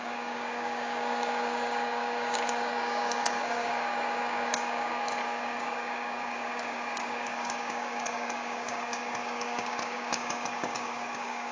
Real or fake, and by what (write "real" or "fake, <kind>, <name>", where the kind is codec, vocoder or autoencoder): fake, codec, DAC